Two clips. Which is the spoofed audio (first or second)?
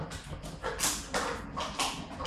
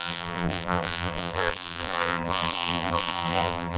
second